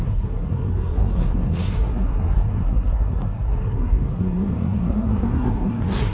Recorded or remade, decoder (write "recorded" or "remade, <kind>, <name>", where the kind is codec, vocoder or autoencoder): remade, codec, SNAC